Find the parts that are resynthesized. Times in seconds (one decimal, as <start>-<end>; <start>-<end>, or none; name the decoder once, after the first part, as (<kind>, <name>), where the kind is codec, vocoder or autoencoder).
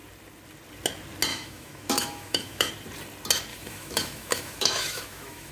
1.3-2.7 (autoencoder, DAC-VAE); 3.5-5.5